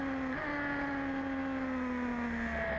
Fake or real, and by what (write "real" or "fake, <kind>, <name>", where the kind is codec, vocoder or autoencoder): real